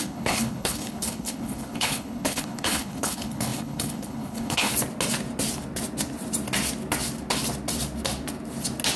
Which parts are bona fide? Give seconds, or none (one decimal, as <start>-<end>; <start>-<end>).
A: 4.7-9.0